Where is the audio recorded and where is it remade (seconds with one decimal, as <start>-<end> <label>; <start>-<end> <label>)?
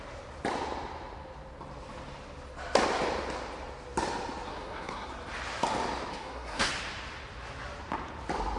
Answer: 0.0-4.5 recorded; 4.5-5.1 remade; 5.1-6.1 recorded; 6.1-6.7 remade; 6.7-8.6 recorded